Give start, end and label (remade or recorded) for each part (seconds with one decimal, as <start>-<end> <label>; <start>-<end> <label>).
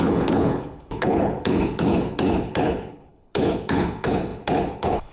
0.0-5.1 remade